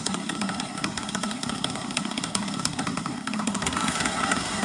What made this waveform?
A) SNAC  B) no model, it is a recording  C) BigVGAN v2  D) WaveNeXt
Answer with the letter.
A